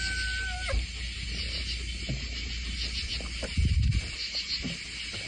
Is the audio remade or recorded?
recorded